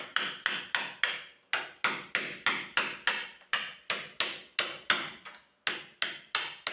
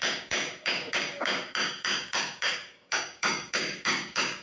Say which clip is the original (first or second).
first